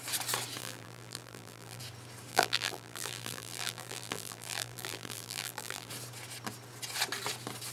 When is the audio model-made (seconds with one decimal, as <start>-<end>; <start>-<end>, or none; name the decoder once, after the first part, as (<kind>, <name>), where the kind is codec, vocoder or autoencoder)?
0.6-1.8 (vocoder, BigVGAN v2); 2.3-5.9